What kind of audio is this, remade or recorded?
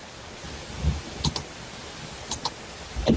recorded